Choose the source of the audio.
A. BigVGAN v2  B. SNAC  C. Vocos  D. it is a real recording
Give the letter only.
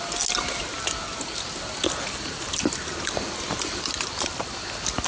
D